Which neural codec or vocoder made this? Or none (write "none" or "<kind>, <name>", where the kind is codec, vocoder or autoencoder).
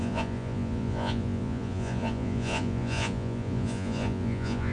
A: vocoder, Vocos